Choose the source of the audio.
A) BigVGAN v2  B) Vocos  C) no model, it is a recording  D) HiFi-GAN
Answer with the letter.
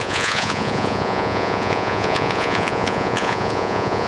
B